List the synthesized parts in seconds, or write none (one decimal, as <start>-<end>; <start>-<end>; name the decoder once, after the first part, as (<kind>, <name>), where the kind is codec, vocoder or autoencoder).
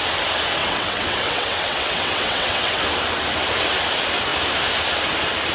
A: 0.6-2.8 (vocoder, WaveNeXt)